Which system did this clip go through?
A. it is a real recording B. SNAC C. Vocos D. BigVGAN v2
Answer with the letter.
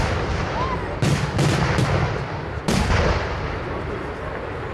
A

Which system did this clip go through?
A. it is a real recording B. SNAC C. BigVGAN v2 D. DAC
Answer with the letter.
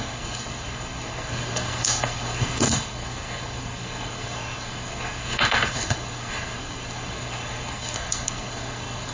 B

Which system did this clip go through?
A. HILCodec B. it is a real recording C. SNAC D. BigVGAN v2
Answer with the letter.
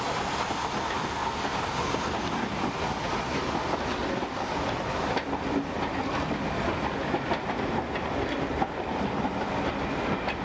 B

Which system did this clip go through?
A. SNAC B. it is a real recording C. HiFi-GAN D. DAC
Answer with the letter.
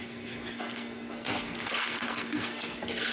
A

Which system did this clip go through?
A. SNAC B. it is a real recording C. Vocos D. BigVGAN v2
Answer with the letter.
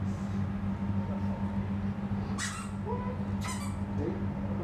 B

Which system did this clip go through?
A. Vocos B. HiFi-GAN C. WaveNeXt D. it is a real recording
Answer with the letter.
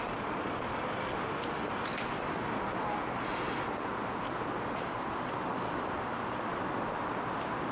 D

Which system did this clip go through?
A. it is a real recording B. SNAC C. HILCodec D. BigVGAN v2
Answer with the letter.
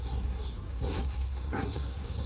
B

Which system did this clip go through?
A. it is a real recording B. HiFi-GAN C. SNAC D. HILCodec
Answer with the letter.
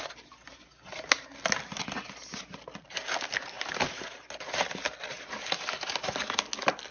A